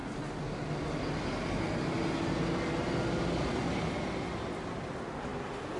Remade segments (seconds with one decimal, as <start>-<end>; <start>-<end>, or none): none